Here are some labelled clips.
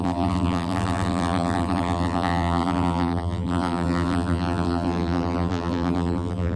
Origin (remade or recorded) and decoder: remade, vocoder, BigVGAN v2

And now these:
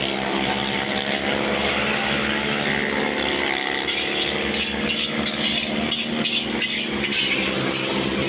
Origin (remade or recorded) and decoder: recorded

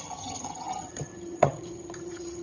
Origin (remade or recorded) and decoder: remade, vocoder, HiFi-GAN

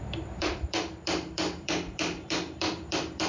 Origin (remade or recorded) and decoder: remade, vocoder, BigVGAN v2